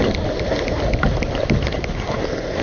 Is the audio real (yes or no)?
yes